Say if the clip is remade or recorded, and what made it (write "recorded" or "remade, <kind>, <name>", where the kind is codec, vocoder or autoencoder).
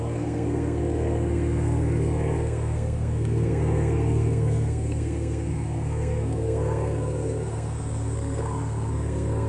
remade, codec, SNAC